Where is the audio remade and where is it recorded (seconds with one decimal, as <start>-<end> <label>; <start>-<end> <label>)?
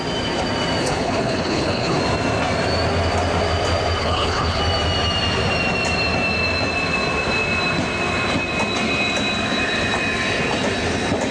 0.0-0.8 recorded; 0.8-2.0 remade; 2.0-4.0 recorded; 4.0-4.6 remade; 4.6-11.3 recorded